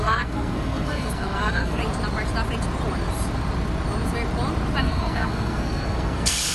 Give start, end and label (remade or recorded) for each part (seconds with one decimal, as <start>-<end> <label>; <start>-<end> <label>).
0.0-1.8 remade; 1.8-4.8 recorded; 4.8-6.5 remade

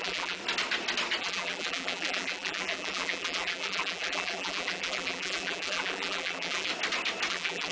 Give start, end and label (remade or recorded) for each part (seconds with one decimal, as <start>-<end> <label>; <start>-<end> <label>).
0.0-0.4 remade; 0.4-1.2 recorded; 1.2-6.7 remade; 6.7-7.3 recorded; 7.3-7.7 remade

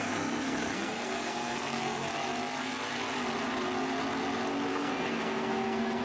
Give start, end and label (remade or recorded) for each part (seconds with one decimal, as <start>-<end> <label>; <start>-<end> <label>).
0.0-2.1 remade; 2.1-4.7 recorded; 4.7-6.0 remade

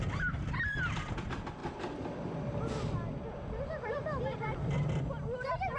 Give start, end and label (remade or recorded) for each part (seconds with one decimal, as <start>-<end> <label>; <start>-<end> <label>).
0.0-5.8 recorded

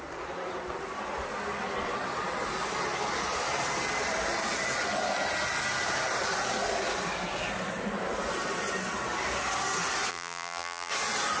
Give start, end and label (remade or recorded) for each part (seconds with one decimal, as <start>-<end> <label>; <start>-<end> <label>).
0.0-10.1 recorded; 10.1-10.9 remade; 10.9-11.4 recorded